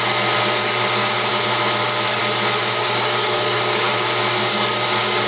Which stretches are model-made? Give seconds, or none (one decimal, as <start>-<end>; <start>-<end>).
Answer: 2.6-3.9; 4.4-5.3